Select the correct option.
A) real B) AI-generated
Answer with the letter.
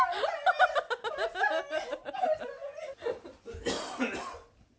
A